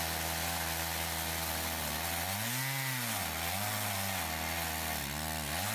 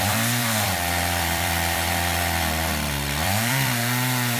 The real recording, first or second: first